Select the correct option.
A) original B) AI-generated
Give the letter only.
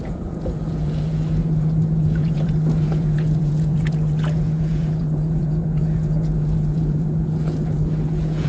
B